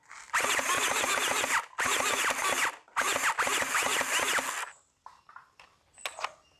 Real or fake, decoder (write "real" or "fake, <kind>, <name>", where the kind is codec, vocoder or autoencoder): real